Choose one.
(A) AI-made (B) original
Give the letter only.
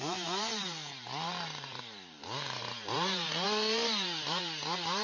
A